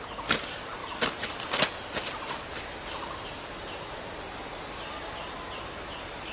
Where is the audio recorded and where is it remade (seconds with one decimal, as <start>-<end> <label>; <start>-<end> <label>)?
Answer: 0.0-6.3 recorded